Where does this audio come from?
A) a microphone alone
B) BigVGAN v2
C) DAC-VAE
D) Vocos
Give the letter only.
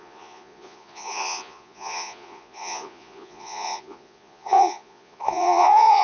D